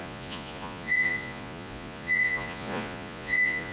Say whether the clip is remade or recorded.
remade